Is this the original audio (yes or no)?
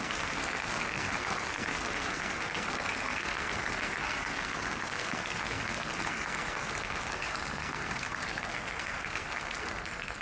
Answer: no